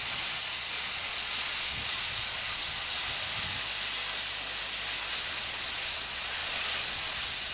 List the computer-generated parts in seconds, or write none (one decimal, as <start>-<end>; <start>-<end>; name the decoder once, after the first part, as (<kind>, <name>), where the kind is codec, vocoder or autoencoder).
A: 0.0-3.0 (vocoder, Vocos); 5.1-7.5